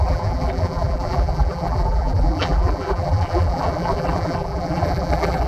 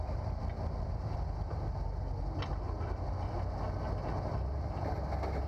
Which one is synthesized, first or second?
first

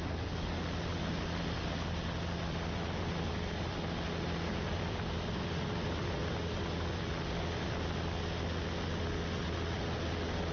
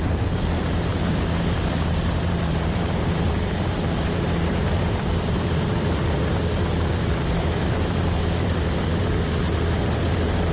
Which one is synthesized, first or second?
second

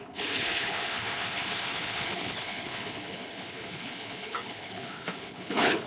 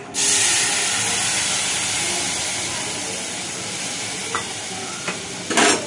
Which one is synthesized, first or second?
first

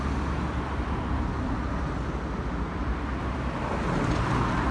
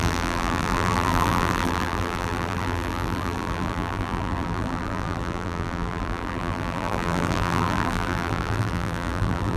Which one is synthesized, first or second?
second